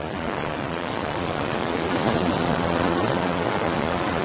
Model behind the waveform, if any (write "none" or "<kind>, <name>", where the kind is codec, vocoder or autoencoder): vocoder, Vocos